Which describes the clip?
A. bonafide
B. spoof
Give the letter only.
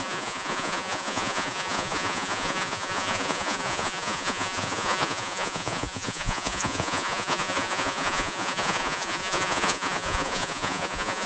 B